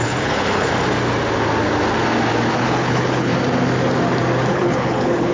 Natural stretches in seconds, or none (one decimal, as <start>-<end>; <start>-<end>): 0.7-2.5; 3.3-4.5